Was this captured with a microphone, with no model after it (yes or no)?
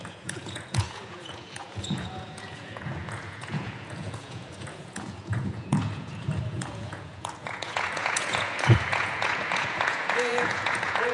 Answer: no